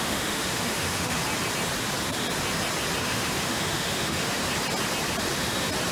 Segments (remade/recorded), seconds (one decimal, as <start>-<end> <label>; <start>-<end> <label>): 0.0-1.2 remade; 1.2-3.0 recorded; 3.0-4.4 remade; 4.4-5.9 recorded